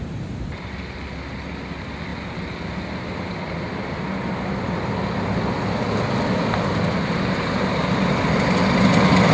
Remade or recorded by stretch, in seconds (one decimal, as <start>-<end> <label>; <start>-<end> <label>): 0.0-9.3 recorded